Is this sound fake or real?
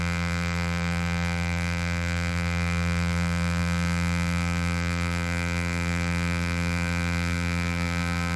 fake